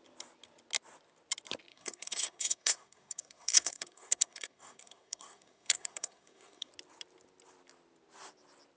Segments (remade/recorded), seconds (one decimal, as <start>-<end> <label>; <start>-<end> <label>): 0.0-1.7 recorded; 1.7-6.7 remade; 6.7-8.8 recorded